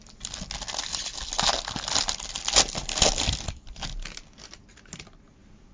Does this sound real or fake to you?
real